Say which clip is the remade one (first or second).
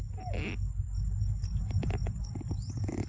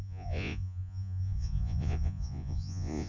second